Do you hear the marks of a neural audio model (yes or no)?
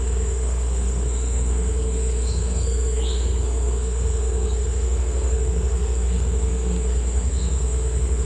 yes